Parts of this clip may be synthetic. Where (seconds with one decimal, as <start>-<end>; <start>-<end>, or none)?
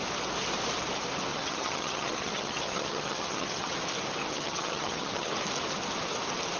1.3-3.7; 4.2-5.3